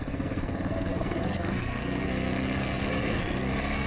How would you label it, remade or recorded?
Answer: remade